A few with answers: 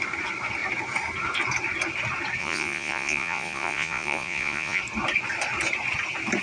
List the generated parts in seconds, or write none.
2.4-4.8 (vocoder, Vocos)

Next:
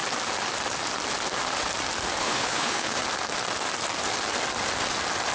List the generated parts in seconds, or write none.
2.2-3.0 (codec, HILCodec)